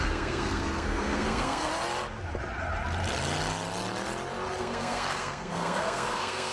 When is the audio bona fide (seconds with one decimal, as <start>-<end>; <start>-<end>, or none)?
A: 1.7-4.6